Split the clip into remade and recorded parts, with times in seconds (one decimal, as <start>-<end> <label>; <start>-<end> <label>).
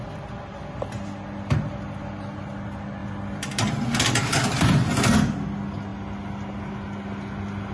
0.0-7.7 recorded